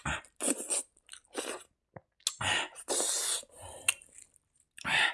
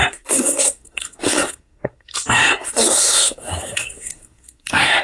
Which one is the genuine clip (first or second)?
first